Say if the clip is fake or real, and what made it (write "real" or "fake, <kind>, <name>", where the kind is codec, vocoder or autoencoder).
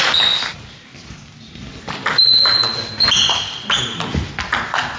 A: real